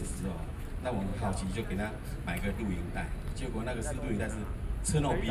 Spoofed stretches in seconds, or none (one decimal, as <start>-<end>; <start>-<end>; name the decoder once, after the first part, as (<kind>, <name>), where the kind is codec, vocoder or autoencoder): 0.0-0.6 (autoencoder, DAC-VAE)